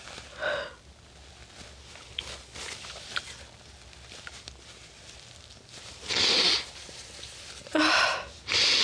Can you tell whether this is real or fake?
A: real